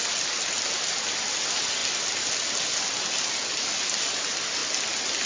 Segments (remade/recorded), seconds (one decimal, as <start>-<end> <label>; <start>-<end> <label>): 0.0-5.3 recorded